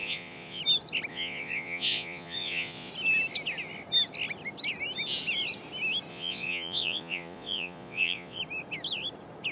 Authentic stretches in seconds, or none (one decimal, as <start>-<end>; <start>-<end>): 0.6-1.1; 2.9-6.1; 8.4-9.5

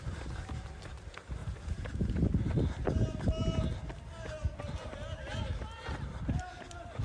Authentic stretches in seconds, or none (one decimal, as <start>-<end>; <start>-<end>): 0.0-1.4; 2.1-7.0